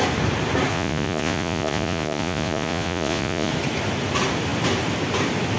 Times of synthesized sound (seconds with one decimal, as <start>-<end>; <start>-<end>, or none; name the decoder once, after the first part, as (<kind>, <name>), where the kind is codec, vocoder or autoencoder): 0.7-3.5 (vocoder, Vocos)

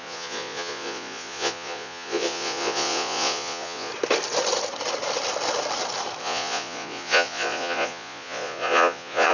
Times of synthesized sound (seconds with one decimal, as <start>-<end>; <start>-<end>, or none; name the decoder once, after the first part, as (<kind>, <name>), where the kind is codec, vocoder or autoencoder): 0.0-3.9 (vocoder, Vocos); 6.2-9.3

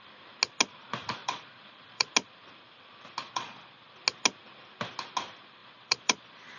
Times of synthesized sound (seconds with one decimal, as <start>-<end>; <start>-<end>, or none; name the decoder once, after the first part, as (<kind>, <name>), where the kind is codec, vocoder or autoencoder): 1.2-2.1 (vocoder, Vocos); 3.2-3.9; 5.6-6.6

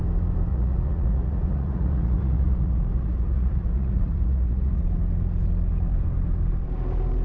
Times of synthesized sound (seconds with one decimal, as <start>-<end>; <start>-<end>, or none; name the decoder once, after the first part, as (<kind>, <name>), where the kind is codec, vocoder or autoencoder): 0.5-4.8 (vocoder, Vocos)

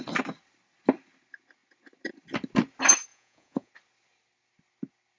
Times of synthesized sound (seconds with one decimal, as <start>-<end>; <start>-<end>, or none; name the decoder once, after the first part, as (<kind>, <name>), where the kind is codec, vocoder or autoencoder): 3.1-3.7 (vocoder, Vocos)

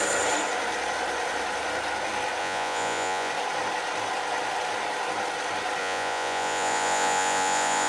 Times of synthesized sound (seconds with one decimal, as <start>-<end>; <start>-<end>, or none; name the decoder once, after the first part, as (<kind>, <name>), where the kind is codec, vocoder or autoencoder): 2.4-3.3 (vocoder, Vocos); 5.8-7.9